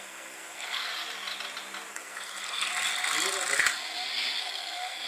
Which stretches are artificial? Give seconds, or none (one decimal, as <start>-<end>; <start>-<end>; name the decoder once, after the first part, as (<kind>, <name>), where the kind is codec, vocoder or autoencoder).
0.0-0.9 (codec, SNAC); 1.9-2.7; 4.4-5.1